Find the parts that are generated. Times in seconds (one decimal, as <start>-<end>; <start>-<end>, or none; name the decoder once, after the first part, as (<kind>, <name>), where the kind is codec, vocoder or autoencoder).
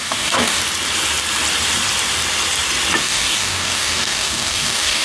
0.0-0.6 (codec, DAC); 3.0-5.0